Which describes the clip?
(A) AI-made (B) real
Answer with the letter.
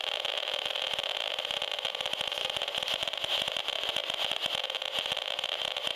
B